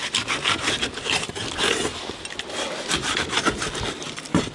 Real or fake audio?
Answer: real